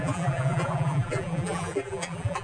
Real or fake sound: fake